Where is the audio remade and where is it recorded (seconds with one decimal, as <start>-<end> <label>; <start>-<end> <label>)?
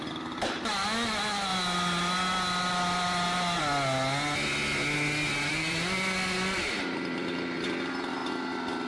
0.0-1.5 remade; 1.5-5.5 recorded; 5.5-8.2 remade; 8.2-8.9 recorded